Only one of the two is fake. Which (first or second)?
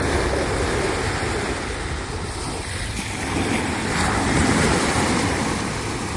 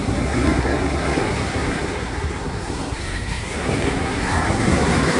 second